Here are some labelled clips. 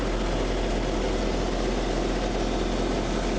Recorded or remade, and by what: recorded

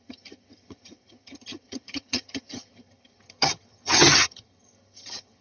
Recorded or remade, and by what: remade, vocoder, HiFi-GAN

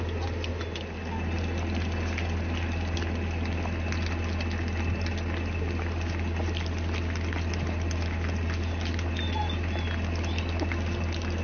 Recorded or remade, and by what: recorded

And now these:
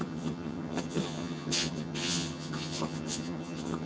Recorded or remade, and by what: remade, vocoder, HiFi-GAN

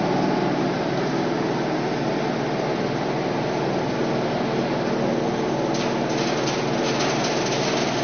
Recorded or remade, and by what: recorded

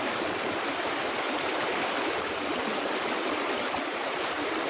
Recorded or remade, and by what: recorded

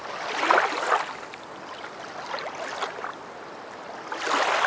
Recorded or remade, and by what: recorded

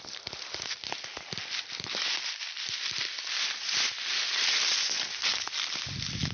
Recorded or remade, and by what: recorded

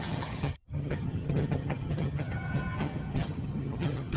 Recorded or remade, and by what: remade, vocoder, HiFi-GAN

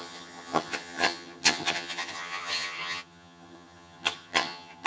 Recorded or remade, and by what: remade, vocoder, HiFi-GAN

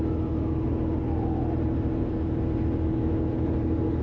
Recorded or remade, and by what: recorded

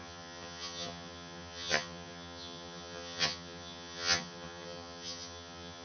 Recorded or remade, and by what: remade, vocoder, HiFi-GAN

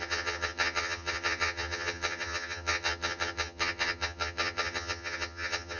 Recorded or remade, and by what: remade, vocoder, HiFi-GAN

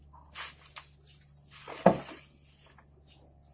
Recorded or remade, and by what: recorded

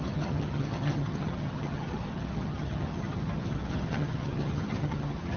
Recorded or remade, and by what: remade, vocoder, HiFi-GAN